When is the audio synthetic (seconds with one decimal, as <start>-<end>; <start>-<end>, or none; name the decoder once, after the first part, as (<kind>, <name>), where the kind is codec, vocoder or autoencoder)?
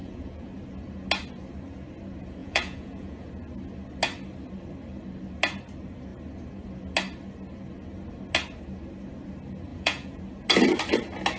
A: 0.0-0.5 (vocoder, Vocos); 2.4-3.3; 9.7-10.2